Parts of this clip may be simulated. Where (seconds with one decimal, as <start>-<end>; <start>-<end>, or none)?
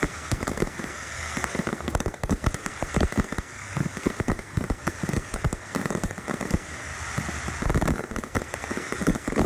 0.0-6.9; 7.9-9.5